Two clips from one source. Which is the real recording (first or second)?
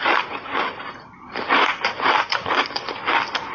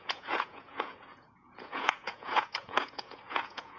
first